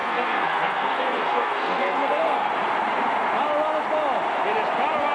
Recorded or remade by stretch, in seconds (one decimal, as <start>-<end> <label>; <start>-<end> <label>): 0.0-2.5 remade; 2.5-5.1 recorded